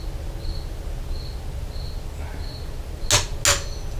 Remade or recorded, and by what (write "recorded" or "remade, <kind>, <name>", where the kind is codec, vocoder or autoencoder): recorded